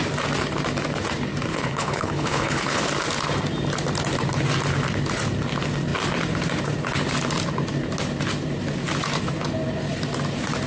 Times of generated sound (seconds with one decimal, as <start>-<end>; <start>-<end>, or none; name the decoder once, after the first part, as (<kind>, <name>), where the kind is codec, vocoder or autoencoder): 1.5-2.8 (codec, HILCodec)